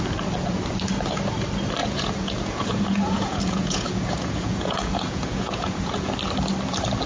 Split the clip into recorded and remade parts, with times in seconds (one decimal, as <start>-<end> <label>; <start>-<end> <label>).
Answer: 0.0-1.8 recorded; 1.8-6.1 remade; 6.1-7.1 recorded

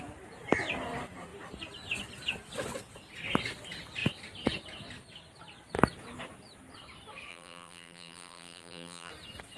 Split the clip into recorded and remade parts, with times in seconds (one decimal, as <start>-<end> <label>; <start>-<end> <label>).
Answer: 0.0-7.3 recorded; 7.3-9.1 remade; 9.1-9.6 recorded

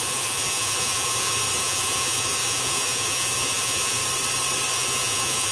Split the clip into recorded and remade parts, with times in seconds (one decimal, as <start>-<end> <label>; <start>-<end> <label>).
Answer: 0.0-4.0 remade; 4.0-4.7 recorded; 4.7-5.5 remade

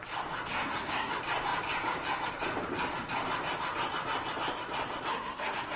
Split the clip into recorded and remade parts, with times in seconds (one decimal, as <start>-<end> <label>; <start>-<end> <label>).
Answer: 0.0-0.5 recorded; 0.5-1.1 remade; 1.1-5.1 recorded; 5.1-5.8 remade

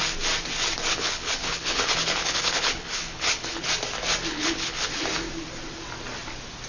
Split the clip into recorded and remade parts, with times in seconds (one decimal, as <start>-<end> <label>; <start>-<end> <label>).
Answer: 0.0-0.9 recorded; 0.9-3.7 remade; 3.7-4.3 recorded; 4.3-4.9 remade; 4.9-6.7 recorded

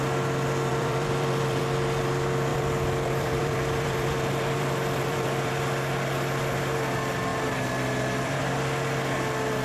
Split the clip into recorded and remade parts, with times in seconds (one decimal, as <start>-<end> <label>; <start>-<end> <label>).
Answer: 0.0-0.7 recorded; 0.7-1.6 remade; 1.6-2.5 recorded; 2.5-5.5 remade; 5.5-7.3 recorded; 7.3-8.4 remade; 8.4-9.6 recorded